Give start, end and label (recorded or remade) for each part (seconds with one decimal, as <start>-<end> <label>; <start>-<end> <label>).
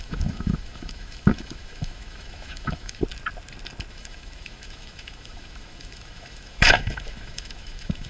0.0-3.0 remade; 3.0-3.9 recorded; 3.9-8.1 remade